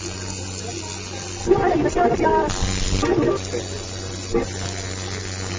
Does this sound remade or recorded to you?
recorded